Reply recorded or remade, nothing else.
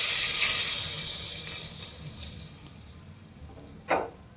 remade